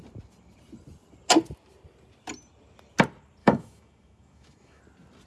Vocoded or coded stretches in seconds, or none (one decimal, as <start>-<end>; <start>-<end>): 3.4-4.8